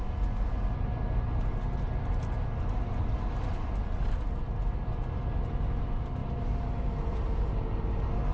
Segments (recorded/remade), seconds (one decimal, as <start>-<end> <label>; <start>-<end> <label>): 0.0-6.2 recorded; 6.2-7.8 remade; 7.8-8.3 recorded